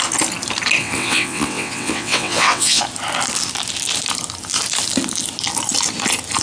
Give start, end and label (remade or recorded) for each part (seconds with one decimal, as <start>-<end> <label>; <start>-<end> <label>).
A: 0.0-0.8 recorded; 0.8-2.8 remade; 2.8-6.4 recorded